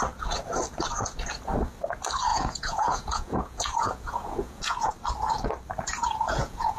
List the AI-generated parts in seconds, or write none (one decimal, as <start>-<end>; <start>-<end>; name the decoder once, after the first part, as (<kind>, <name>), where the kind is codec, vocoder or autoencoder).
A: 2.3-4.9 (vocoder, Vocos); 5.9-6.8